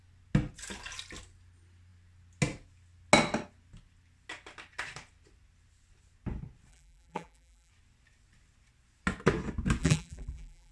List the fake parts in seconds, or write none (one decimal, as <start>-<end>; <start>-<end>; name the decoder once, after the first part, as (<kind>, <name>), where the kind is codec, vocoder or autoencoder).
6.7-7.7 (vocoder, BigVGAN v2); 9.8-10.7